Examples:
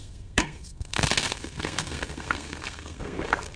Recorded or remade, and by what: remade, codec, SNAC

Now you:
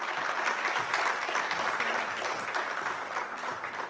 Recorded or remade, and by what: recorded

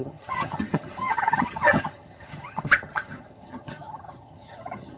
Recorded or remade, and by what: remade, vocoder, HiFi-GAN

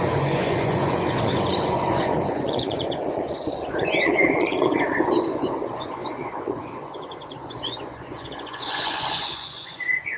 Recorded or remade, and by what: remade, vocoder, Vocos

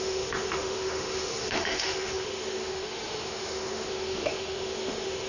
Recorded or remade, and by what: remade, autoencoder, DAC-VAE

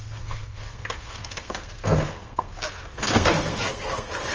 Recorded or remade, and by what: remade, codec, SNAC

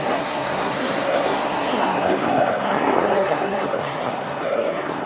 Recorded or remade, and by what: remade, codec, SNAC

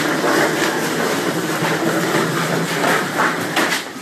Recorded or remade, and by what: recorded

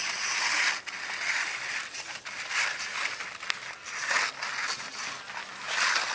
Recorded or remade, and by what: recorded